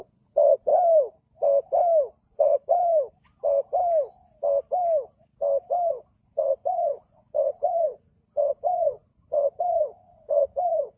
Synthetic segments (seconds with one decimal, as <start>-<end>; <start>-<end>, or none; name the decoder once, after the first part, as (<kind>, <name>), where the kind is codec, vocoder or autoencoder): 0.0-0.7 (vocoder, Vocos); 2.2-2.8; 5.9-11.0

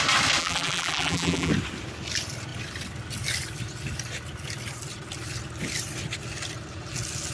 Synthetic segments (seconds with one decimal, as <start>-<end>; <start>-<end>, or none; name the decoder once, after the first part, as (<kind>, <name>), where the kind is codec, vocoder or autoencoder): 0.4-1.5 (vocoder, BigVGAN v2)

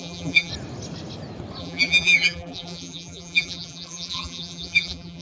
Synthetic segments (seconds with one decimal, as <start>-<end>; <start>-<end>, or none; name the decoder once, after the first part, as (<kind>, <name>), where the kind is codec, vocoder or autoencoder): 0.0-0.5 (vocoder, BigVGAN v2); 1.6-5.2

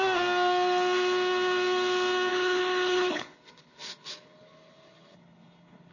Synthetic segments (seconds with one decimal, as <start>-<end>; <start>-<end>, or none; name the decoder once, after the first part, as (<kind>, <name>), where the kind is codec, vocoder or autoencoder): 2.3-5.9 (codec, HILCodec)